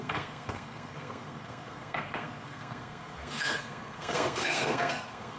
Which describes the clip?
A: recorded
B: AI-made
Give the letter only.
B